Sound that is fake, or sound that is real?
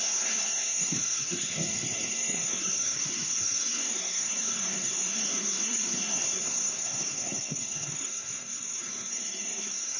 fake